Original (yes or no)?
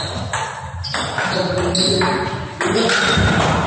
yes